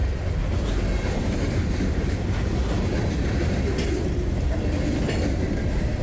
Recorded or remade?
recorded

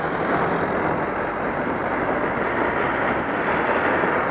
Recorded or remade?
recorded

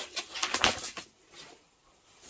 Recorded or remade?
recorded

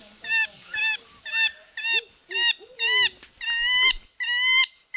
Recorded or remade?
recorded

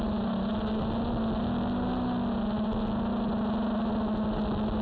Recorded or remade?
recorded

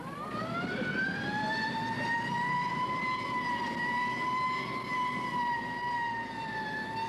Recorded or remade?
remade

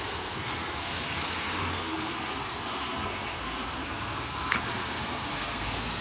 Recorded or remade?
remade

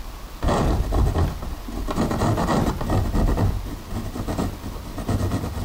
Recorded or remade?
recorded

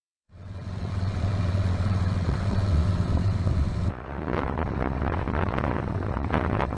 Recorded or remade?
remade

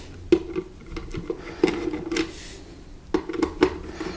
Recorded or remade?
recorded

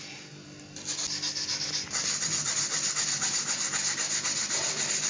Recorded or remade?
recorded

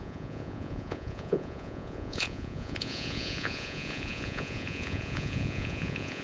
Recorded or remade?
remade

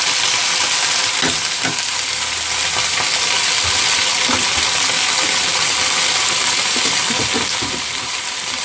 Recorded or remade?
recorded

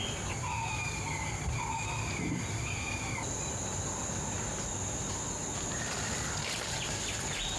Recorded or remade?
recorded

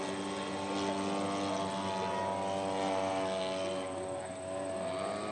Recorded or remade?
recorded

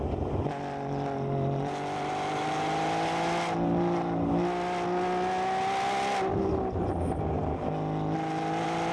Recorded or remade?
recorded